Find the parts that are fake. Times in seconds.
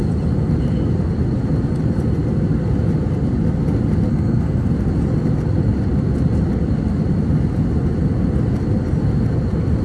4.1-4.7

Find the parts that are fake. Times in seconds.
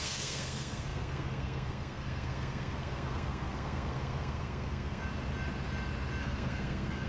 0.0-5.0; 6.2-7.1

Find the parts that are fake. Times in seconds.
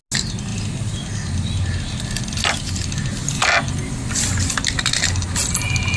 none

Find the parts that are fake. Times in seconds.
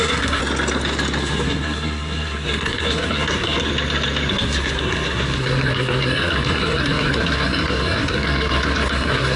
0.0-0.4; 1.2-3.7; 4.3-9.4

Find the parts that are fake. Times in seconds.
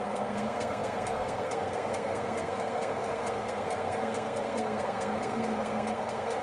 0.0-6.4